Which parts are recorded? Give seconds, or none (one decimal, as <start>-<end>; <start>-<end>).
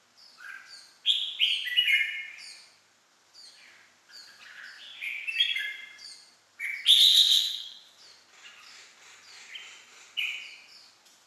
0.0-7.1; 7.8-11.3